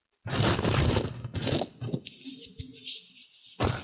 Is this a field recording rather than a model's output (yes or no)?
yes